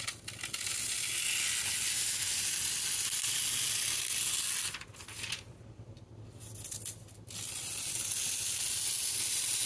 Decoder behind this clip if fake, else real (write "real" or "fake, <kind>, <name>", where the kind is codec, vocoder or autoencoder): real